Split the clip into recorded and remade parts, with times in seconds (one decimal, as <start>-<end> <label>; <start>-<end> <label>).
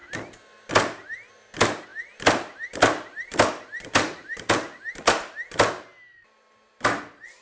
0.0-1.9 recorded; 1.9-4.5 remade; 4.5-7.4 recorded